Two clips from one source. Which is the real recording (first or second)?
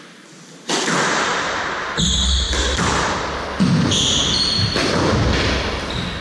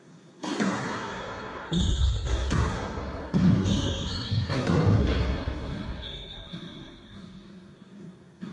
first